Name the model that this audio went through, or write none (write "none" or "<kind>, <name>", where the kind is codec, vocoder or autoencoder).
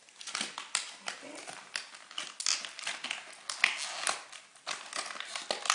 none